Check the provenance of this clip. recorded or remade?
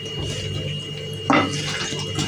remade